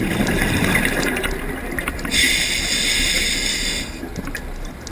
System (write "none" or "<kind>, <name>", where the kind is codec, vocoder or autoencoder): none